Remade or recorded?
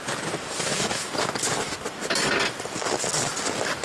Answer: recorded